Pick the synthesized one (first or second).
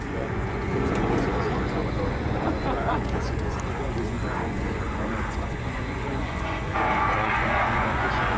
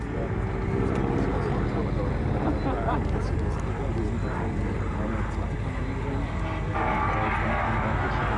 first